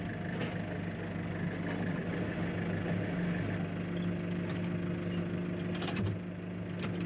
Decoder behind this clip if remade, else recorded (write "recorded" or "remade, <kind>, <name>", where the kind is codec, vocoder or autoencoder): recorded